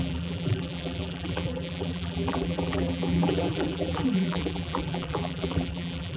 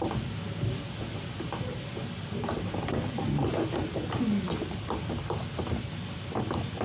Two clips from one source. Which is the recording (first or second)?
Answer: second